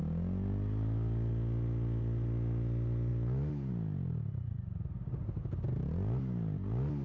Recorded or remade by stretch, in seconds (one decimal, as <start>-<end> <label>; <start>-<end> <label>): 0.0-7.0 recorded